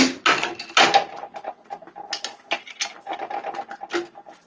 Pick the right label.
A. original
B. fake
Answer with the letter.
A